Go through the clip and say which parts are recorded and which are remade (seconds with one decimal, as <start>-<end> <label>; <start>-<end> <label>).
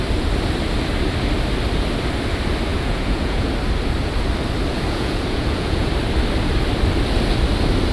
0.0-2.7 recorded; 2.7-3.5 remade; 3.5-4.7 recorded; 4.7-5.9 remade; 5.9-7.9 recorded